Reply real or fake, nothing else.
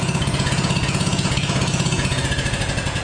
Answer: fake